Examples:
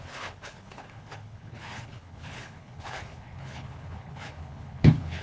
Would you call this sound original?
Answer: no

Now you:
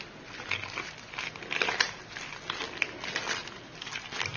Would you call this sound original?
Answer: yes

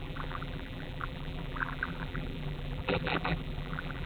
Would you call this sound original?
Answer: no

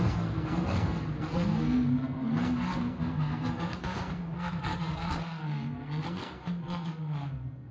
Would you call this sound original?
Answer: no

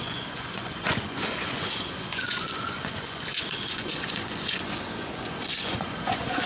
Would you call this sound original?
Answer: no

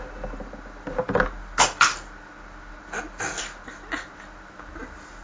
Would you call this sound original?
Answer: yes